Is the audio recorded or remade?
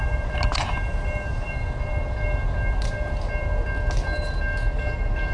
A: recorded